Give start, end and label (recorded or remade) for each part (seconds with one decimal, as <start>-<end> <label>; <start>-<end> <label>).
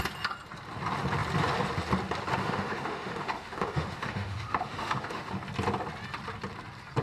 0.0-2.4 recorded; 2.4-5.3 remade; 5.3-7.0 recorded